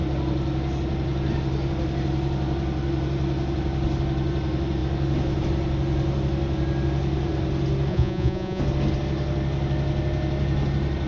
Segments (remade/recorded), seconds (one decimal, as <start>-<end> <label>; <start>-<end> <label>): 0.0-7.9 recorded; 7.9-8.6 remade; 8.6-11.1 recorded